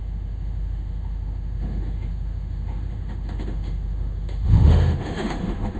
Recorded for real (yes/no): no